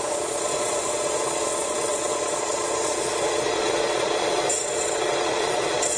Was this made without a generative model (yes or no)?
no